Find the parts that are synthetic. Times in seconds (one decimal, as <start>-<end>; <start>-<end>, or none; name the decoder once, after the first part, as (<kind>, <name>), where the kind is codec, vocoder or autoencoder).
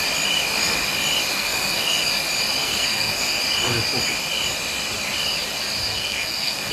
1.3-2.1 (codec, SNAC); 2.6-3.4; 5.9-6.7